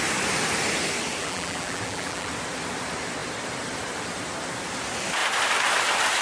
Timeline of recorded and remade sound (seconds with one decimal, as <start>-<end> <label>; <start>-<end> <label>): 0.0-1.2 recorded; 1.2-2.3 remade; 2.3-6.2 recorded